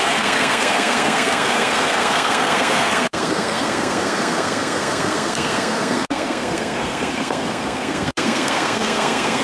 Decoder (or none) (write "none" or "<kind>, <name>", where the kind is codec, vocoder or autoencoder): codec, SNAC